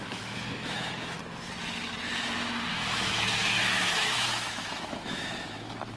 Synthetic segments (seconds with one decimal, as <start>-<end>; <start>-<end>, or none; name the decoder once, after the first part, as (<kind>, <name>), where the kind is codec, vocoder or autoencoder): 0.0-1.2 (autoencoder, DAC-VAE); 2.7-6.0